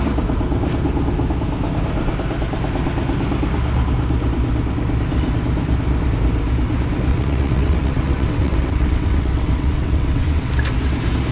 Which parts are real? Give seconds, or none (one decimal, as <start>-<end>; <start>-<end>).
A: 0.0-7.1; 10.5-11.3